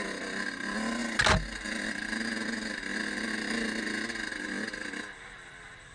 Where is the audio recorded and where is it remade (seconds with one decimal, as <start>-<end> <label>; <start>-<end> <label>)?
0.0-5.9 recorded